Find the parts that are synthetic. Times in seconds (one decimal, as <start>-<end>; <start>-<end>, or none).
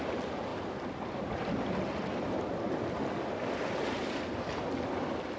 none